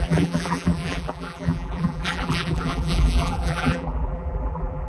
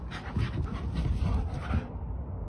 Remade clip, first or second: first